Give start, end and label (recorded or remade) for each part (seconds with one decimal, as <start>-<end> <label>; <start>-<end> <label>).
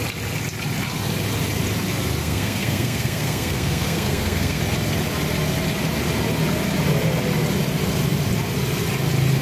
0.0-2.2 recorded; 2.2-4.6 remade; 4.6-9.4 recorded